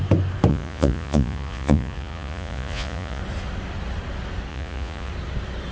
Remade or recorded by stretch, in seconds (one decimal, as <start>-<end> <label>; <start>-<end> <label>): 0.0-0.5 recorded; 0.5-3.2 remade; 3.2-4.5 recorded; 4.5-5.1 remade; 5.1-5.7 recorded